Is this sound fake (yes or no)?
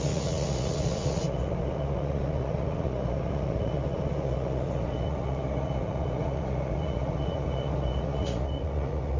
yes